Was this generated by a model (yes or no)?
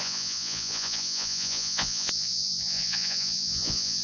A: yes